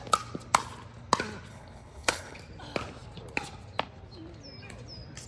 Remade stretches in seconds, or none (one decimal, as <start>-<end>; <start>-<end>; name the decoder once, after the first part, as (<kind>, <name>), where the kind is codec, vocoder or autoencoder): 1.5-2.4 (codec, HILCodec)